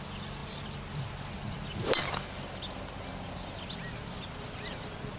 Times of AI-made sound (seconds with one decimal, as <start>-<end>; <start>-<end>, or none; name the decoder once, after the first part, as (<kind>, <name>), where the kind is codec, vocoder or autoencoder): none